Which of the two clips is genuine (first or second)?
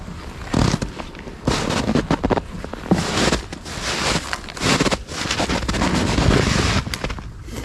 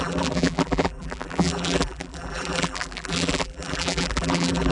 first